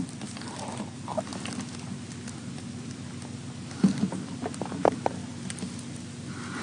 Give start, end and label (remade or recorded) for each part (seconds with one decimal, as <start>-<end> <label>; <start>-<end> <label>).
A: 0.0-5.2 recorded; 5.2-6.6 remade